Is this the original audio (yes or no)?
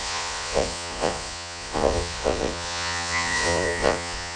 no